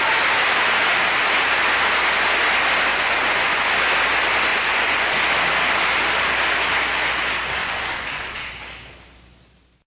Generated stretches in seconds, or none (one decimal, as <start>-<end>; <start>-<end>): 2.9-3.7; 4.5-5.2; 7.6-8.5